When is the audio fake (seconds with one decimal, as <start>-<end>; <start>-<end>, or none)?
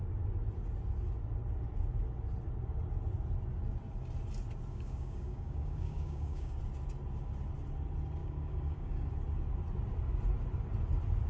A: 4.7-6.6; 8.2-9.1